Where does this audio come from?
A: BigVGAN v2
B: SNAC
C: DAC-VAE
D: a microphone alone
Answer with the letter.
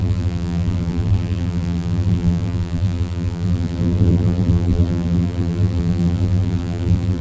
A